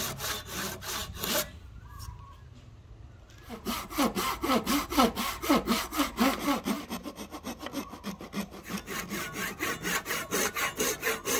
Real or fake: real